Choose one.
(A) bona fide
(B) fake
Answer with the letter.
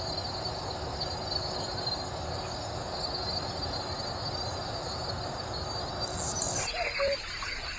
A